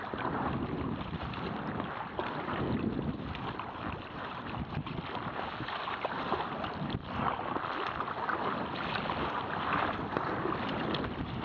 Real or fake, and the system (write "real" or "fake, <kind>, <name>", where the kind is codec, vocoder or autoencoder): real